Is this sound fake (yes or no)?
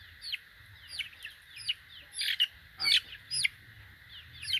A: no